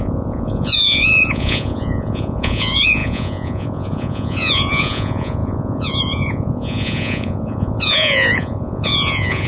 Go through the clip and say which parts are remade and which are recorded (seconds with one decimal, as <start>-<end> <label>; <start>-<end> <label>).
0.0-9.5 remade